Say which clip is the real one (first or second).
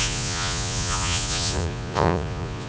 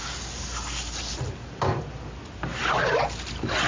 second